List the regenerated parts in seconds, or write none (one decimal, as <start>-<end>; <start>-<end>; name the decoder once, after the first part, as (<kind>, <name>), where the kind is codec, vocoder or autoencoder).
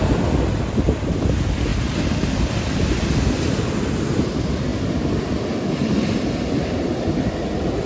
none